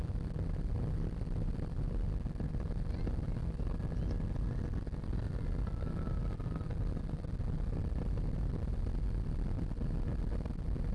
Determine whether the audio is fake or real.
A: real